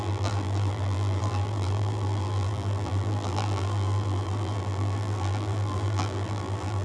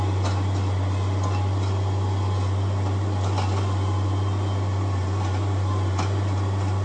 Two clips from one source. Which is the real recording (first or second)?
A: second